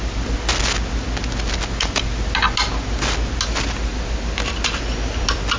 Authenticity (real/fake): real